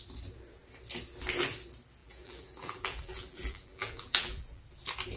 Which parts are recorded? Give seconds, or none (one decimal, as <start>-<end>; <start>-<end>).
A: 0.0-2.0; 4.6-5.2